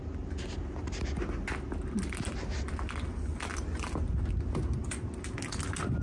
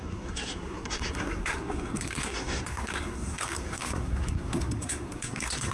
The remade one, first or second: second